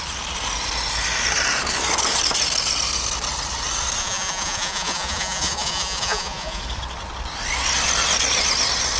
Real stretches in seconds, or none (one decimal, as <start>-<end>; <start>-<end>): 0.0-4.0; 6.6-9.0